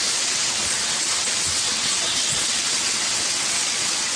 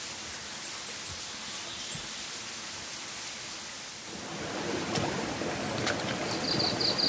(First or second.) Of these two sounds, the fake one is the first